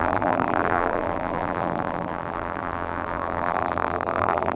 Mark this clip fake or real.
fake